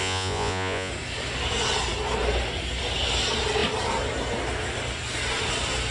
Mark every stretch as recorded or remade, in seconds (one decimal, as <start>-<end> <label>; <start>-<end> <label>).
0.0-0.9 remade; 0.9-5.9 recorded